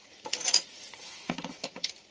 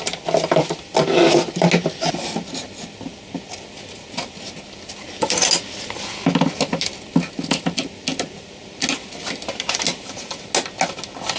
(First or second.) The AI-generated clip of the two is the first